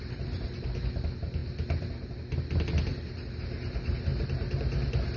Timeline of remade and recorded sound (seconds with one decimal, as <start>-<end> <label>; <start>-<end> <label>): 0.0-5.2 recorded